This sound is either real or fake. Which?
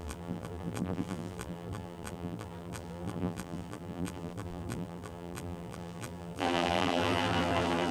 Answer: fake